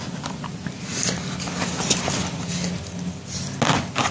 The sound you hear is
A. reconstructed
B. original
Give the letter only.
B